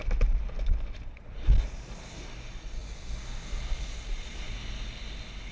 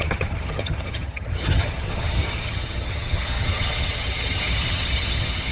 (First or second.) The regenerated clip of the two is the second